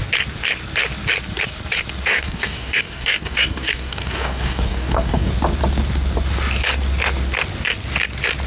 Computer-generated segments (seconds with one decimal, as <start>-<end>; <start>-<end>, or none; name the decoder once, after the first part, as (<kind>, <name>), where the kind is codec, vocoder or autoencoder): 2.1-5.3 (codec, DAC)